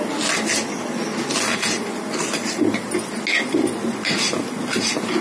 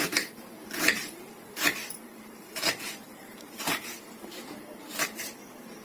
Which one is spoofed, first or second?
second